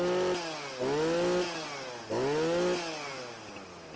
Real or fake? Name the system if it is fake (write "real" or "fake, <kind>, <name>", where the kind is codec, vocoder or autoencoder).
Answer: real